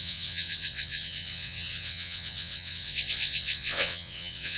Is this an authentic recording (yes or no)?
no